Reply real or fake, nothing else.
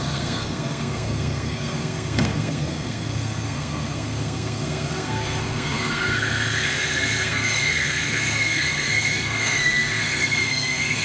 fake